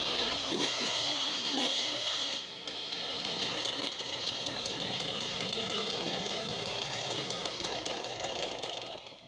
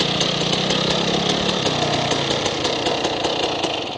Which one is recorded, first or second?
second